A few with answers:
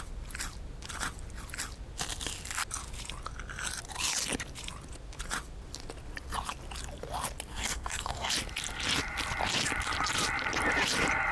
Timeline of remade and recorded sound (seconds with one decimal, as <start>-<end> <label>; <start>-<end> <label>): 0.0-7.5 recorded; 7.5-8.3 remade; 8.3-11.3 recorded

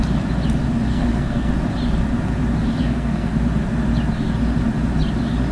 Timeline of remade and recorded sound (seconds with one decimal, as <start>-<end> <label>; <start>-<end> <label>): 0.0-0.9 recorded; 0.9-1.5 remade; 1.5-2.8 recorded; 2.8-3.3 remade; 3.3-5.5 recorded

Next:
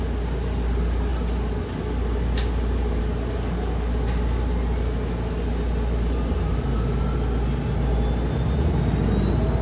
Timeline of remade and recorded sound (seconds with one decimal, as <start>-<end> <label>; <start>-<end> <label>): 0.0-9.6 recorded

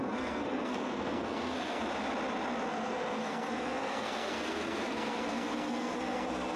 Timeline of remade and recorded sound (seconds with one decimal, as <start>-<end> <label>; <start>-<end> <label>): 0.0-1.8 remade; 1.8-2.7 recorded; 2.7-6.6 remade

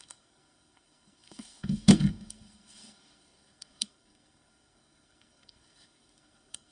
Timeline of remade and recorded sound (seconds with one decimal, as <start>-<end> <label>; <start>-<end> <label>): 0.0-6.7 remade

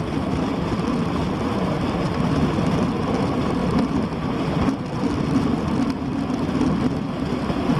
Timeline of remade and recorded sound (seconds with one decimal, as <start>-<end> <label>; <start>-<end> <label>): 0.0-7.8 recorded

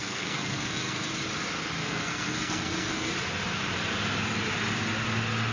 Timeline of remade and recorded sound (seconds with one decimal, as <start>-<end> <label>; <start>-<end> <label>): 0.0-1.1 remade; 1.1-1.8 recorded; 1.8-3.1 remade; 3.1-5.5 recorded